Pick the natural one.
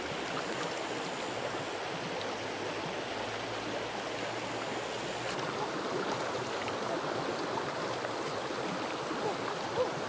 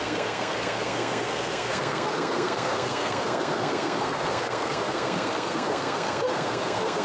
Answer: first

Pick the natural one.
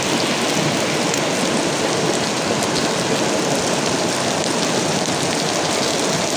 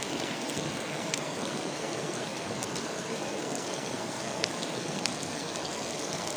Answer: first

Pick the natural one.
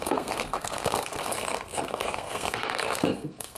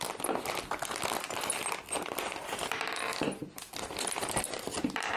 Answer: second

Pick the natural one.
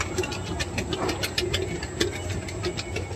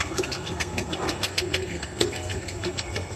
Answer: first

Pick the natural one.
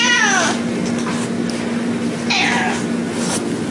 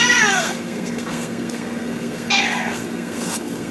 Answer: first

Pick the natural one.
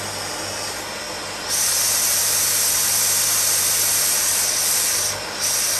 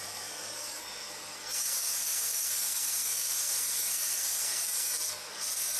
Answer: first